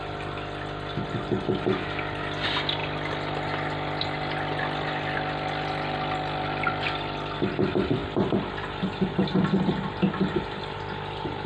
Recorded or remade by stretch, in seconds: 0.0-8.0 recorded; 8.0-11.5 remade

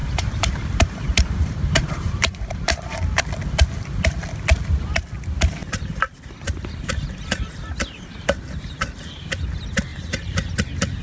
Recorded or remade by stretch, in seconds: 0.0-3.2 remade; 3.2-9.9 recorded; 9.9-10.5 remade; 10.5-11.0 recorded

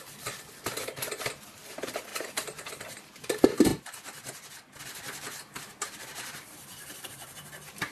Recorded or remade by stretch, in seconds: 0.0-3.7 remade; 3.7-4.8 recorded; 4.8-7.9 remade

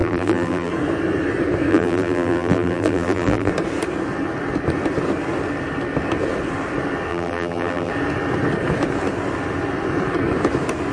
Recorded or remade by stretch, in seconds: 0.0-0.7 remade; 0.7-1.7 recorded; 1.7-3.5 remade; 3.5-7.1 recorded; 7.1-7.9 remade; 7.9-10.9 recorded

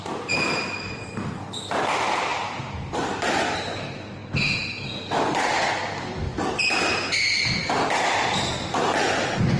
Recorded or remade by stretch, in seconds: 0.0-9.6 recorded